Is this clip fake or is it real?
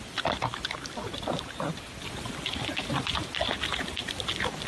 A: real